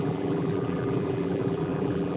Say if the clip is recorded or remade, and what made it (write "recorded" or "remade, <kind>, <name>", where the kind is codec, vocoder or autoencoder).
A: remade, vocoder, BigVGAN v2